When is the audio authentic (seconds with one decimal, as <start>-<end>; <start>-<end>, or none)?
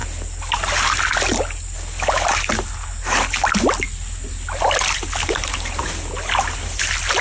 0.0-7.2